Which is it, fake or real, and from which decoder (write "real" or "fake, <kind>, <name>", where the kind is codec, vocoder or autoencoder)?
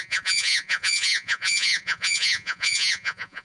fake, vocoder, Vocos